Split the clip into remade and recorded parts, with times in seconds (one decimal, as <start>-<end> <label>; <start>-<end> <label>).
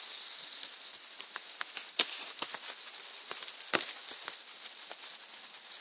0.0-5.8 recorded